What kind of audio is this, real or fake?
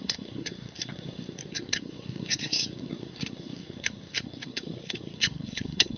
fake